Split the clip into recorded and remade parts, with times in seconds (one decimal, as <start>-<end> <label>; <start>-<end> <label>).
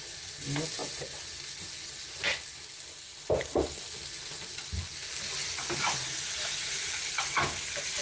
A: 0.0-8.0 recorded